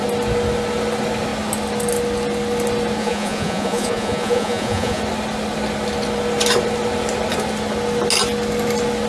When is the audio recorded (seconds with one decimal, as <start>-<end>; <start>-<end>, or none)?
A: 0.0-3.0; 5.0-9.1